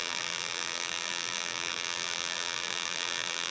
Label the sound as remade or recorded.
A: remade